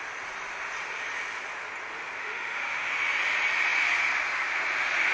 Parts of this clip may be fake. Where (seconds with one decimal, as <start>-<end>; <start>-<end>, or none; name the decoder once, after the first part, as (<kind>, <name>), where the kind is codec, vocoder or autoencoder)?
2.2-2.9 (autoencoder, DAC-VAE)